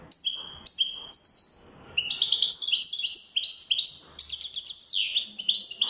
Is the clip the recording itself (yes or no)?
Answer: yes